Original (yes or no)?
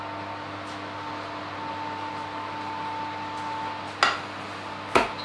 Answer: yes